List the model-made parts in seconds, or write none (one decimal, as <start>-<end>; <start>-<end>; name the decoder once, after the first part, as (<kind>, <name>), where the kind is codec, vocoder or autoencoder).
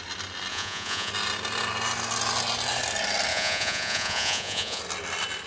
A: 0.5-1.1 (vocoder, Vocos); 3.3-4.8